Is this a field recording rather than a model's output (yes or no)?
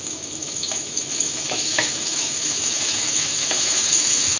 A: no